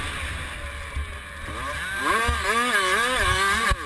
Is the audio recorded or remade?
recorded